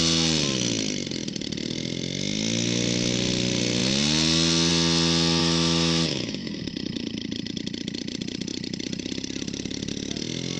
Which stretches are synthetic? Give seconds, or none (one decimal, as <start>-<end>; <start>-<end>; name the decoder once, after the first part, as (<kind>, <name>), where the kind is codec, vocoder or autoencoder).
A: 5.4-6.6 (autoencoder, DAC-VAE)

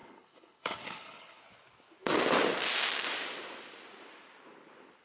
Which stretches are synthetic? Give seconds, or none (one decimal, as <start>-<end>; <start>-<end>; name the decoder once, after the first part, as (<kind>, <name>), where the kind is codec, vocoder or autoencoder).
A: 0.0-1.4 (codec, HILCodec)